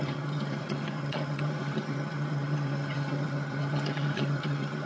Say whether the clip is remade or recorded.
remade